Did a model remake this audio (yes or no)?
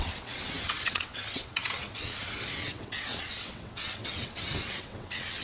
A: yes